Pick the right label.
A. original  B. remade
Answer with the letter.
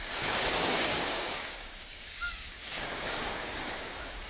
B